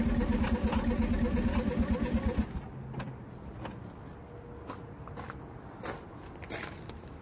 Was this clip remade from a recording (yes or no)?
no